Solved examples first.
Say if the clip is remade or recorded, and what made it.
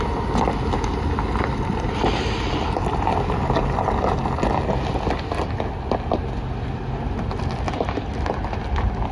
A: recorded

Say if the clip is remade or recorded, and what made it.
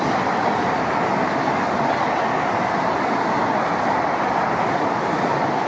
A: recorded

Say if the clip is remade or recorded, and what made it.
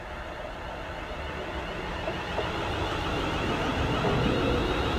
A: recorded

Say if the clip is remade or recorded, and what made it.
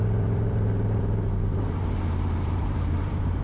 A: remade, vocoder, BigVGAN v2